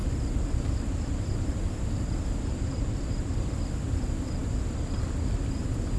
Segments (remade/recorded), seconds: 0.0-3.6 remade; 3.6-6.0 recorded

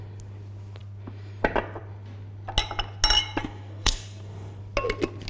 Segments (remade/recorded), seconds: 0.0-3.4 recorded; 3.4-4.6 remade; 4.6-5.3 recorded

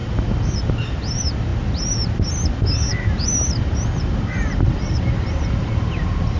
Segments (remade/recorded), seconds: 0.0-0.6 remade; 0.6-2.9 recorded; 2.9-6.4 remade